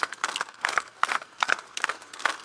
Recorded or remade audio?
remade